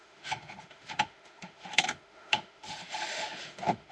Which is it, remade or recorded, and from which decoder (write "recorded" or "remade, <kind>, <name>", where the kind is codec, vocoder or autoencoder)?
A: remade, autoencoder, DAC-VAE